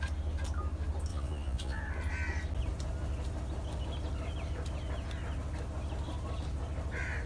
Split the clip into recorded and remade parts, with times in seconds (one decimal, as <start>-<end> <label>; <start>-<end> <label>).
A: 0.0-1.1 recorded; 1.1-1.8 remade; 1.8-7.3 recorded